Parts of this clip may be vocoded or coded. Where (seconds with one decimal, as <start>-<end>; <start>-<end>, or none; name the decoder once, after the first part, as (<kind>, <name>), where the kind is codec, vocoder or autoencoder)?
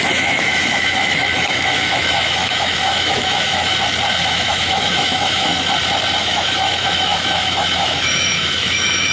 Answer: 0.0-3.7 (autoencoder, DAC-VAE); 4.3-5.5; 6.2-9.1